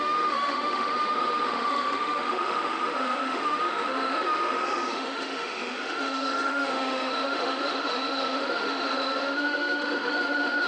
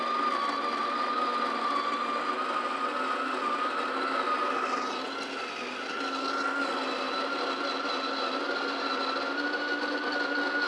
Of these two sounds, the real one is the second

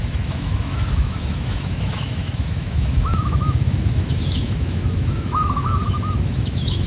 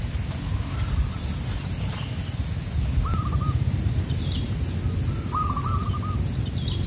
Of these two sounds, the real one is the second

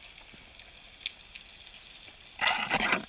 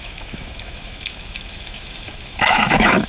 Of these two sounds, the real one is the first